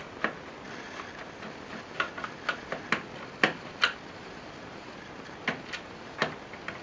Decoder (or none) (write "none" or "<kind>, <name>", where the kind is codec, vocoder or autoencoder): none